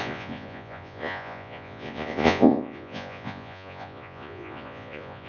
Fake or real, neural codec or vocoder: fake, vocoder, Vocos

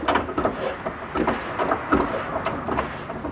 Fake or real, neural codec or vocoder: real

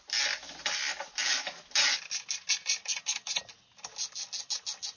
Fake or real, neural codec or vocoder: real